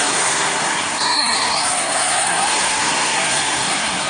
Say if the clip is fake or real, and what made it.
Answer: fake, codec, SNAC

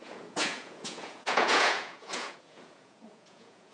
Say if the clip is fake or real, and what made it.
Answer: fake, vocoder, Vocos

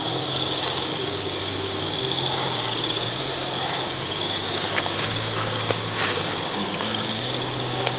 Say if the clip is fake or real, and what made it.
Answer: fake, codec, DAC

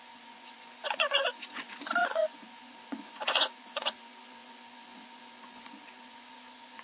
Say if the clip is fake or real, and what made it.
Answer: fake, vocoder, Vocos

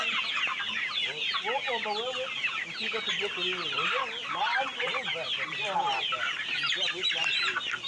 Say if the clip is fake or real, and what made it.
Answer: real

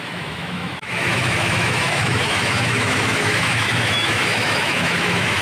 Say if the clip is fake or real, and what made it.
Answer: fake, autoencoder, DAC-VAE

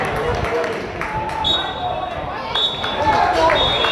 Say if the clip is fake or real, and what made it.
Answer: real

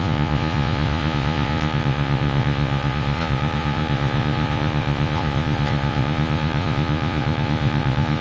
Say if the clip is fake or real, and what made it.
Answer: fake, vocoder, Vocos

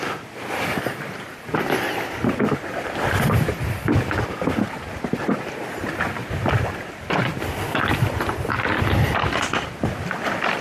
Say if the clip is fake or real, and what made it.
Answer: real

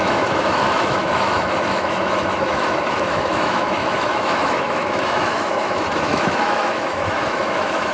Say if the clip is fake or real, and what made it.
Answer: fake, autoencoder, DAC-VAE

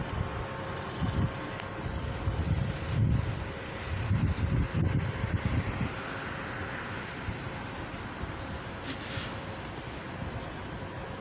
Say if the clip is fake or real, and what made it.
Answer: real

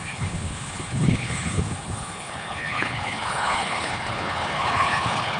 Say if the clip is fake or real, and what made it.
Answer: fake, codec, HILCodec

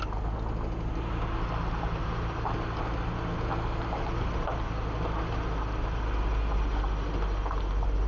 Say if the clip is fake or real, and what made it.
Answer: real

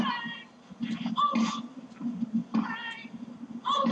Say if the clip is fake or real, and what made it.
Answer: real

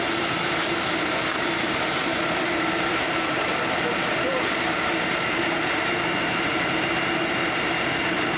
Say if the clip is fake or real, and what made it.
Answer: fake, vocoder, BigVGAN v2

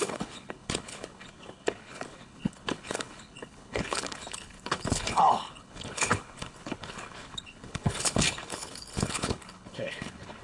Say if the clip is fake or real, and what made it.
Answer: fake, codec, HILCodec